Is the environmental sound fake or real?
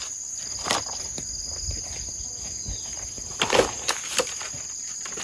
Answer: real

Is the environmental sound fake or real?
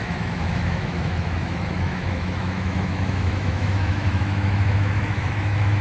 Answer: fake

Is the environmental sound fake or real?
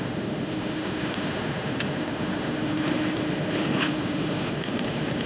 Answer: fake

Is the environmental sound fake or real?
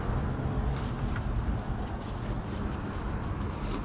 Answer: fake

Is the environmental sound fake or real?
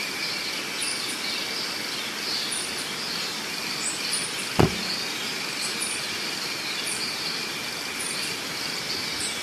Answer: real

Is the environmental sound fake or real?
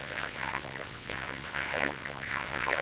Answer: fake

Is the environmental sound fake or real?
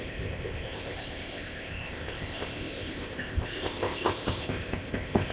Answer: fake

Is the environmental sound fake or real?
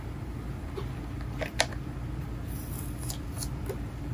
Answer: fake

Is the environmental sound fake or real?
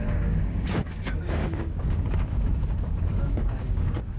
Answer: fake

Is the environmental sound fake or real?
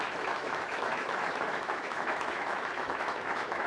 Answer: fake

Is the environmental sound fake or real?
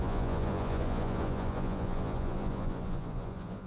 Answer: fake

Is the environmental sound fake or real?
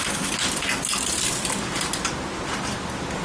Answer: real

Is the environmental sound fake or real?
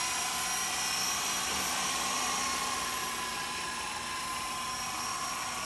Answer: real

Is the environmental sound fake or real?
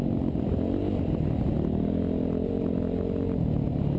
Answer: real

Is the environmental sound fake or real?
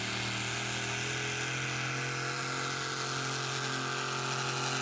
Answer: real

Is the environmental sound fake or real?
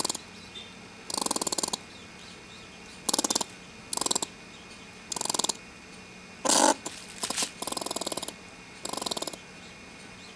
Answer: real